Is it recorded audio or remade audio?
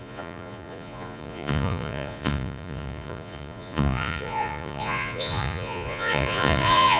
remade